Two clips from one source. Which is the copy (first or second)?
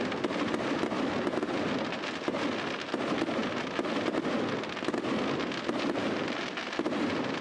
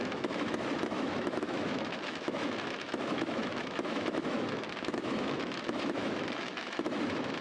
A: second